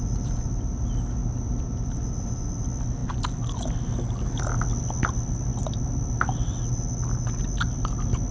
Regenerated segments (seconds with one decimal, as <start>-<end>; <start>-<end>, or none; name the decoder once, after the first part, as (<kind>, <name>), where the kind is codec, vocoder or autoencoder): none

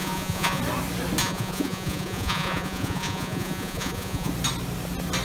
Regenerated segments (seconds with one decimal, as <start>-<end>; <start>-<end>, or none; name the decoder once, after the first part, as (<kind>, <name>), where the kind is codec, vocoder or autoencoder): 0.0-0.6 (vocoder, Vocos); 1.2-4.3

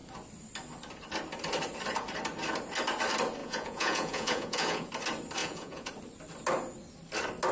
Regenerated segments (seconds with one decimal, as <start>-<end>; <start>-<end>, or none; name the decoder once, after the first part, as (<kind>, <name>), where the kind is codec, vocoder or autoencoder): 3.4-4.9 (vocoder, Vocos); 5.4-5.9